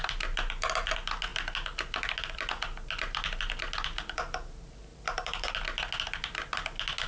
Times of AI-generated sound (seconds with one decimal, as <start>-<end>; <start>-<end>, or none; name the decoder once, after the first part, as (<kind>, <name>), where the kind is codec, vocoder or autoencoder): 4.9-5.5 (vocoder, BigVGAN v2)